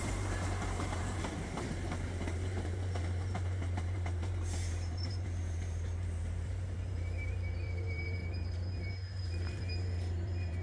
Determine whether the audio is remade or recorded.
remade